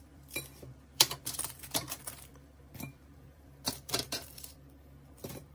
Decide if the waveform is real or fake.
fake